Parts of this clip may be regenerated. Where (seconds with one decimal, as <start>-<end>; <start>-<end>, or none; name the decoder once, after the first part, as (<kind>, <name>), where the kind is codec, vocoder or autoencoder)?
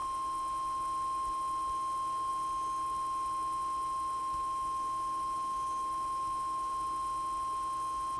4.2-6.7 (autoencoder, DAC-VAE)